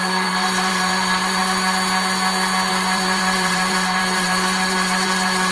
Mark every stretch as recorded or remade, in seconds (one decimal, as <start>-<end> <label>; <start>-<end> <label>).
0.0-1.4 remade; 1.4-2.7 recorded; 2.7-5.5 remade